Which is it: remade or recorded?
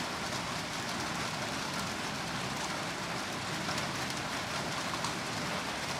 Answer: recorded